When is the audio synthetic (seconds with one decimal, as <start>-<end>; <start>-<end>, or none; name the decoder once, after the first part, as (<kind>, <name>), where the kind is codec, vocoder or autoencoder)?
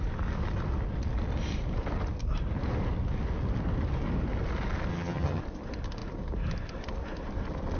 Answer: 4.9-5.4 (vocoder, HiFi-GAN)